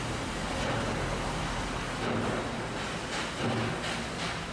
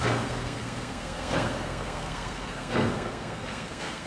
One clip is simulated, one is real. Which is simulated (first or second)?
second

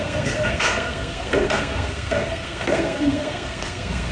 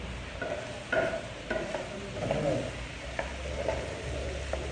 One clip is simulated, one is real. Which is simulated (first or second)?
first